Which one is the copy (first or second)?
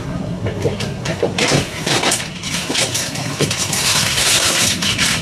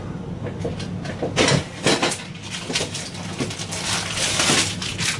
first